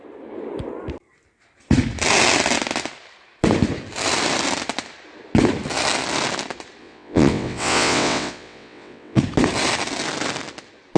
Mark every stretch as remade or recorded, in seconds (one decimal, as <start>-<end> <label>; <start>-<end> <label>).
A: 0.0-6.8 recorded; 6.8-9.2 remade; 9.2-11.0 recorded

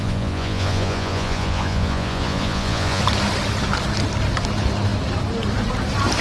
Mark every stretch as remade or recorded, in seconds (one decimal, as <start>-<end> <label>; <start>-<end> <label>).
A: 0.0-3.0 remade; 3.0-6.2 recorded

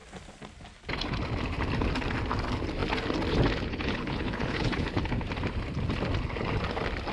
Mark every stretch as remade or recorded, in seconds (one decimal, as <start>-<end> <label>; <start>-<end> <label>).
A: 0.0-3.7 recorded; 3.7-4.9 remade; 4.9-7.1 recorded

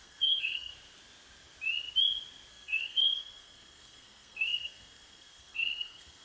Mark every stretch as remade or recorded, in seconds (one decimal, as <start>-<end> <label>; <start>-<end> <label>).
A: 0.0-0.7 remade; 0.7-2.5 recorded; 2.5-6.2 remade

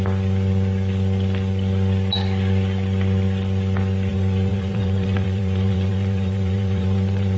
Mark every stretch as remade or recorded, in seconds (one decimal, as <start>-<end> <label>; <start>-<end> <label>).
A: 0.0-4.1 recorded; 4.1-7.4 remade

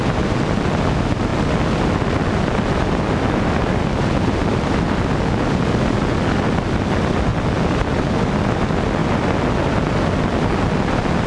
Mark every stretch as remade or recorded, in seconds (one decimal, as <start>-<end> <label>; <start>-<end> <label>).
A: 0.0-11.3 recorded